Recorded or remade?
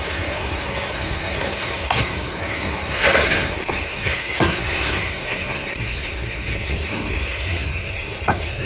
remade